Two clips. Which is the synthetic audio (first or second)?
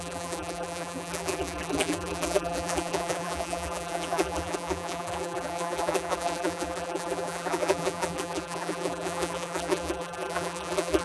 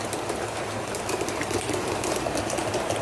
first